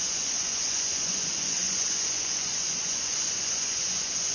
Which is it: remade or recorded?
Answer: remade